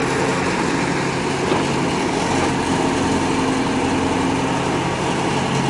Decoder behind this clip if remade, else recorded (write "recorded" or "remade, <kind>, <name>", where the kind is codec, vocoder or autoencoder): recorded